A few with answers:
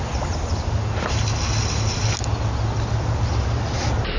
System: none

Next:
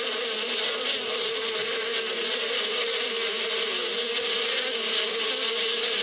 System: none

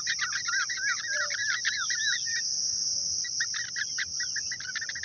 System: none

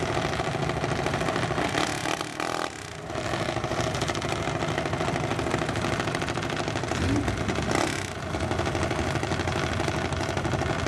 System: none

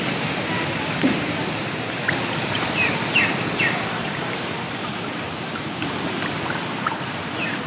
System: vocoder, BigVGAN v2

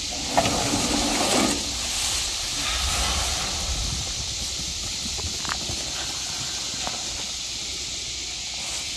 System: none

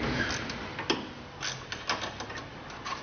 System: none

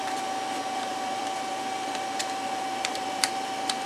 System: vocoder, BigVGAN v2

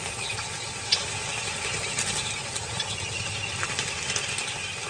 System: none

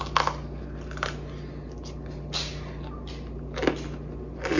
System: none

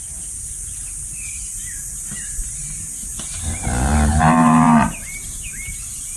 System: vocoder, BigVGAN v2